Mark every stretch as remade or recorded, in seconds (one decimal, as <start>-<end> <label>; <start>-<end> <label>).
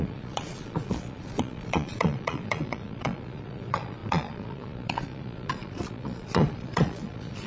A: 0.0-7.5 remade